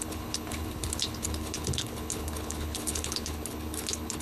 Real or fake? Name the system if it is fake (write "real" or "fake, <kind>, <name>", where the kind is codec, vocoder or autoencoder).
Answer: fake, codec, HILCodec